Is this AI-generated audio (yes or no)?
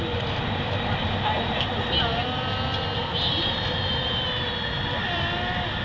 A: no